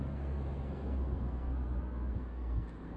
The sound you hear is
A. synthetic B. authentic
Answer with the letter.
A